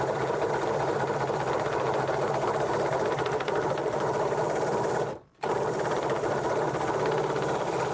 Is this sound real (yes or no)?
yes